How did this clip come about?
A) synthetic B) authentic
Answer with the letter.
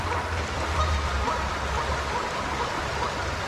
B